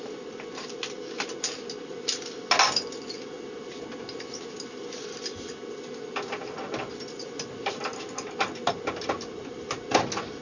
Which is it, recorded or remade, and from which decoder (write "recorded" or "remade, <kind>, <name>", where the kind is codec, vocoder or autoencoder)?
recorded